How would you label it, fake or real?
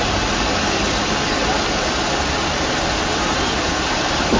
real